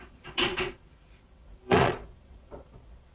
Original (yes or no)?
no